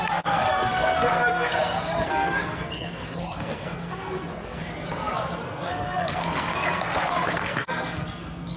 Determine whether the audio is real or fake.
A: fake